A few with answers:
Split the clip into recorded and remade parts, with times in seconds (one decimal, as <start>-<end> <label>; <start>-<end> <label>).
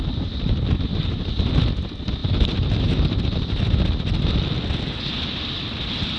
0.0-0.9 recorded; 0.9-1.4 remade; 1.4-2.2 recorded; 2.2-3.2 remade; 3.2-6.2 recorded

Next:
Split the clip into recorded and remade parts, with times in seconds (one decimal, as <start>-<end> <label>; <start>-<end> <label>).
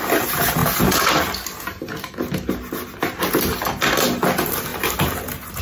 0.0-5.6 recorded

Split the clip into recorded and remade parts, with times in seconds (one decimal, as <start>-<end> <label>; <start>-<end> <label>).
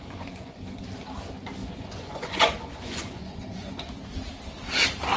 0.0-0.8 remade; 0.8-1.6 recorded; 1.6-3.9 remade; 3.9-5.2 recorded